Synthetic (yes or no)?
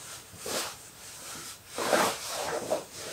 yes